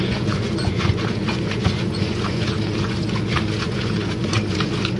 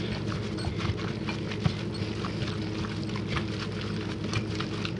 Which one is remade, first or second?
first